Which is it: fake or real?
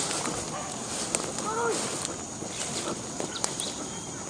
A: fake